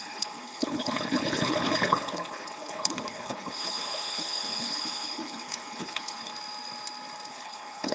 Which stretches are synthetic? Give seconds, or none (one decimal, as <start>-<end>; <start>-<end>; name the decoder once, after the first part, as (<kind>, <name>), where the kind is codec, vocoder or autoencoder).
0.0-6.3 (codec, HILCodec); 7.3-7.9